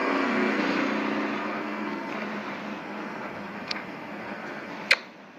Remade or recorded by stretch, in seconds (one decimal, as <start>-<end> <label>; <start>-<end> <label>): 0.0-0.6 remade; 0.6-1.4 recorded; 1.4-2.1 remade; 2.1-2.8 recorded; 2.8-4.7 remade; 4.7-5.4 recorded